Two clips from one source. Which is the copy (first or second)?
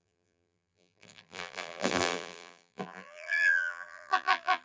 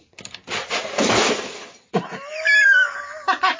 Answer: first